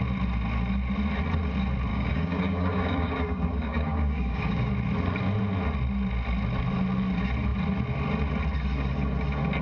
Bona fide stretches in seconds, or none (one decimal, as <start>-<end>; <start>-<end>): 0.0-1.9; 4.7-9.6